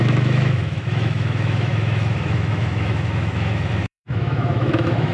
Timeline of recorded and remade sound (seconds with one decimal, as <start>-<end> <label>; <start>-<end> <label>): 0.0-5.1 remade